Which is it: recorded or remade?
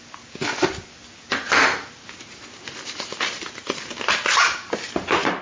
recorded